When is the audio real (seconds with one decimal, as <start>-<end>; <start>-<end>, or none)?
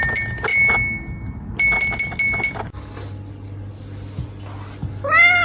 0.0-5.4